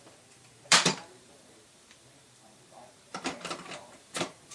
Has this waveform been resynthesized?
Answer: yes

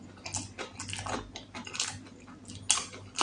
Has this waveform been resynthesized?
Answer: no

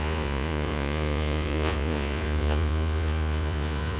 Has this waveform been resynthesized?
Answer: yes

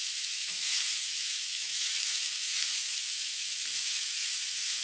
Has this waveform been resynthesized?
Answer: yes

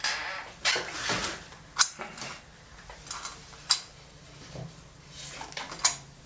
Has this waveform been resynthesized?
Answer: no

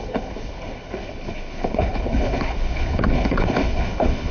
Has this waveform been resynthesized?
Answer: yes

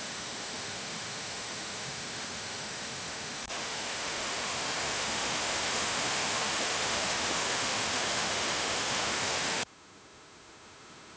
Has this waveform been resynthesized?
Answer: yes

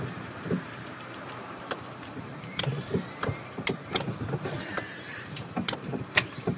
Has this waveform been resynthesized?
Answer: yes